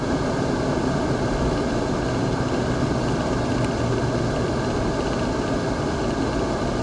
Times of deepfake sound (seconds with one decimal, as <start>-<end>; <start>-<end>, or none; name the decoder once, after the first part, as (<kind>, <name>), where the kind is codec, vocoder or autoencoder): 2.2-2.8 (vocoder, BigVGAN v2)